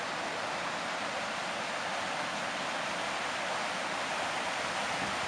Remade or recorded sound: recorded